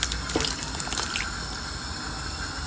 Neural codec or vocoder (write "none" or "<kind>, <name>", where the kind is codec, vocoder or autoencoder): none